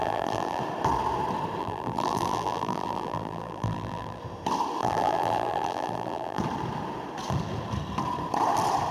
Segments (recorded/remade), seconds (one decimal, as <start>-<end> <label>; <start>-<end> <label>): 0.0-0.6 remade; 0.6-1.6 recorded; 1.6-4.2 remade; 4.2-4.8 recorded; 4.8-6.4 remade; 6.4-8.9 recorded